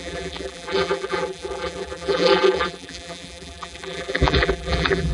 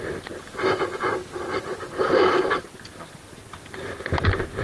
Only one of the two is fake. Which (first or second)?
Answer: first